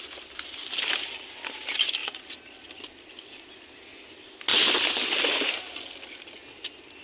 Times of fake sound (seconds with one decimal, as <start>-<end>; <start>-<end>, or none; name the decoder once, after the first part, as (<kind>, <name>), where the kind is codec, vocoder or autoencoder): none